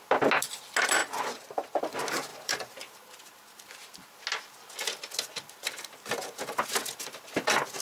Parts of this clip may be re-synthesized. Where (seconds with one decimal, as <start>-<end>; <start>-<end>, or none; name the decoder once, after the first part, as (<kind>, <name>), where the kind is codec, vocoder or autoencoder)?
1.0-1.8 (vocoder, BigVGAN v2); 2.3-3.2